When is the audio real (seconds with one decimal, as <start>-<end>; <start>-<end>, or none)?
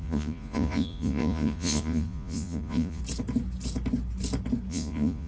3.0-4.7